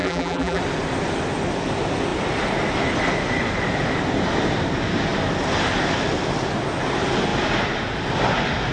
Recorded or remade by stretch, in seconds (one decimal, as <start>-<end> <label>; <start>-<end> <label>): 0.0-0.6 remade; 0.6-8.7 recorded